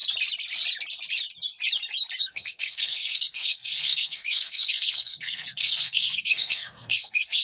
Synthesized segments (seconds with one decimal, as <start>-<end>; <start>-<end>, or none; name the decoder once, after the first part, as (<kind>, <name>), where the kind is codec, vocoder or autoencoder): 2.2-7.4 (codec, SNAC)